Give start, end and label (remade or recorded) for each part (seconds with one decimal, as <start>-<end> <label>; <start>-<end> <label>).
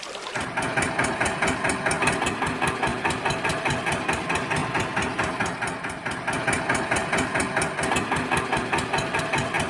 0.0-9.7 recorded